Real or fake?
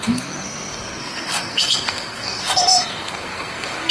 fake